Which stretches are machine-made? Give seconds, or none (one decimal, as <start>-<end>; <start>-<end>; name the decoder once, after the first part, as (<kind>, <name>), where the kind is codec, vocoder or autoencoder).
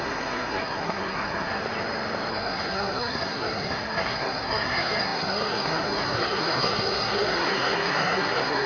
0.0-1.6 (codec, SNAC); 2.3-8.7